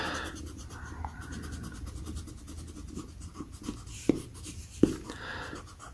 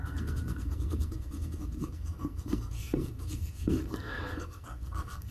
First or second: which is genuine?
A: first